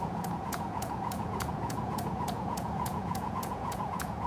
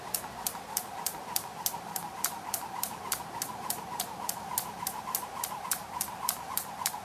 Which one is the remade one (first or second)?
first